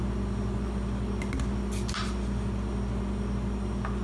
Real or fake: real